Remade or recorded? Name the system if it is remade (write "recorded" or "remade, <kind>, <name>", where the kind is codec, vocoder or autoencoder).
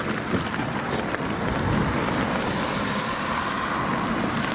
recorded